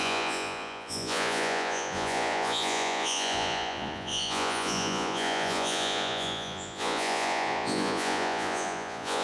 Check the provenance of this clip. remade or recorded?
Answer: remade